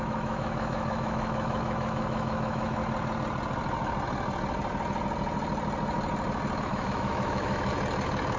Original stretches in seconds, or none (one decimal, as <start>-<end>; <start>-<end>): 2.8-6.6; 7.7-8.4